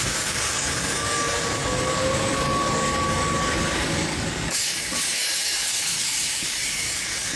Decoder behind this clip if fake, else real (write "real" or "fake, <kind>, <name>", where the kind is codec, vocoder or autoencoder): fake, codec, DAC